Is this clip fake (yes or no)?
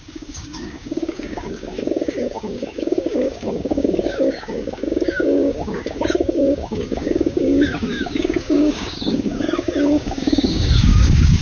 yes